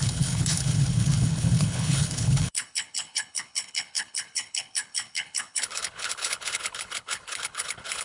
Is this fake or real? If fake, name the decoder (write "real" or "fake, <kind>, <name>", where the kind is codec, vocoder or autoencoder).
fake, codec, HILCodec